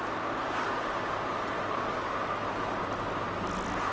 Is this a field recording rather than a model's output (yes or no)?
yes